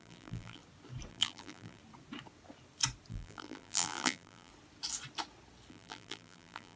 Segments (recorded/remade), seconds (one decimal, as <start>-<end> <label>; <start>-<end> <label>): 0.0-0.6 remade; 0.6-1.1 recorded; 1.1-1.8 remade; 1.8-3.1 recorded; 3.1-4.5 remade; 4.5-5.7 recorded; 5.7-6.8 remade